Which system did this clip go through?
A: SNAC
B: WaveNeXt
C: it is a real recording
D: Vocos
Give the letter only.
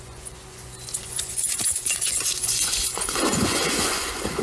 D